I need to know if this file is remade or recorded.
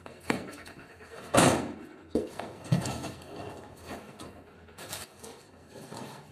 remade